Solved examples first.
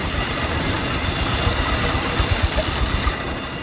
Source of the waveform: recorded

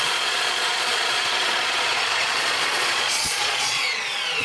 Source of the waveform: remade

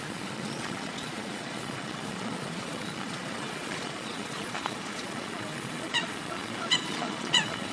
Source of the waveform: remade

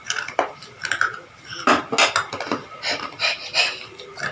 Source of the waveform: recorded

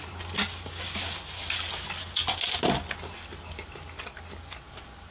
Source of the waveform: recorded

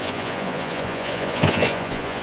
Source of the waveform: remade